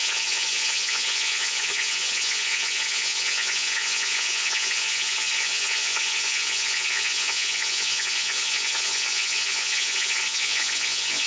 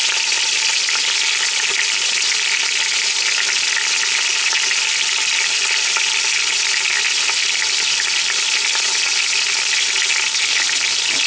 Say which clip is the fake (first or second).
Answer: first